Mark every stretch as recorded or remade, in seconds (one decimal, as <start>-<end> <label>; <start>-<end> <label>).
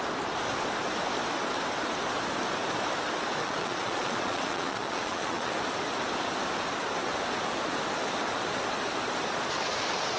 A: 0.0-3.4 recorded; 3.4-5.5 remade; 5.5-10.2 recorded